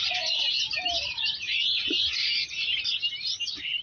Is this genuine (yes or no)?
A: no